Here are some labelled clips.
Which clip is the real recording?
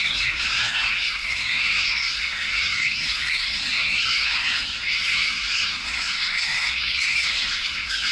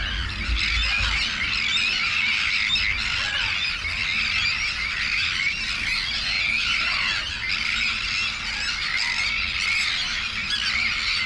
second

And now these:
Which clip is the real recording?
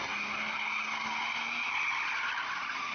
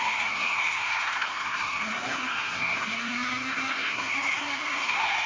first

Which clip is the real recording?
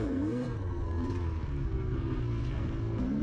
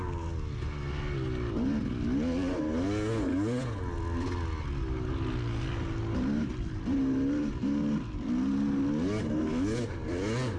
second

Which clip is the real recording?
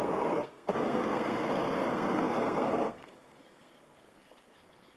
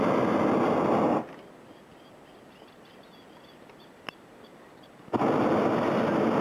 second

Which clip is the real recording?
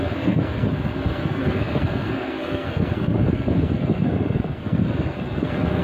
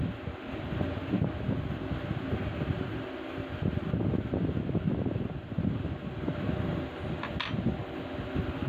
second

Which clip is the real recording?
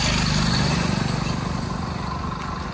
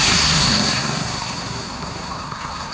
first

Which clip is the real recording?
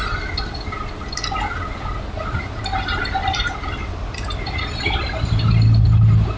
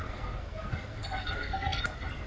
first